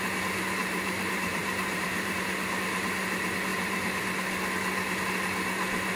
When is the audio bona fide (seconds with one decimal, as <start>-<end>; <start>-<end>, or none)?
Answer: 0.0-0.6; 2.5-3.5; 4.0-6.0